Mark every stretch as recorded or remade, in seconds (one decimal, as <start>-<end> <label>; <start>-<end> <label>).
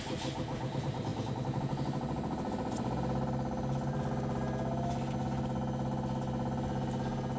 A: 0.0-7.4 recorded